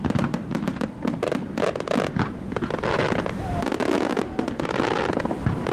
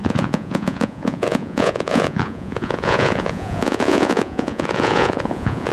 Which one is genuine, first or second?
first